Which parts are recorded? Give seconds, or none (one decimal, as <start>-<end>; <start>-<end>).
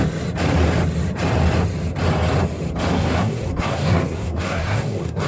0.0-2.9